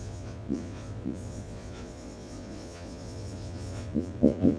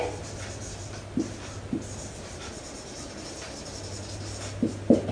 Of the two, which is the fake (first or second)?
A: first